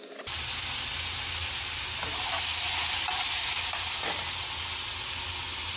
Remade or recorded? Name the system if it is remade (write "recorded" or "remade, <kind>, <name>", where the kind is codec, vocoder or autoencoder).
recorded